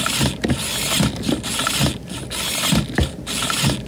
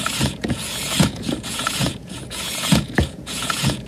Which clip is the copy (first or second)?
second